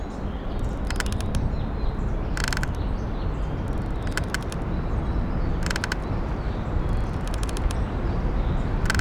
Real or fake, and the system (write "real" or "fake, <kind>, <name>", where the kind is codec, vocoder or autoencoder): real